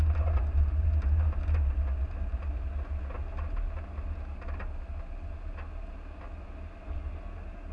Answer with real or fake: real